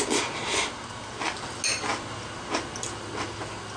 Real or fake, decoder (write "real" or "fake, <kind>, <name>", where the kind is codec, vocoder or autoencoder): real